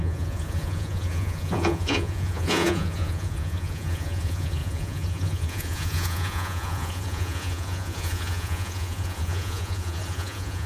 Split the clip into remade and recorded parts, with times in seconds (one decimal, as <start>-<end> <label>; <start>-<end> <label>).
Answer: 0.0-10.7 remade